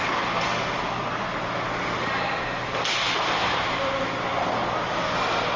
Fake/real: real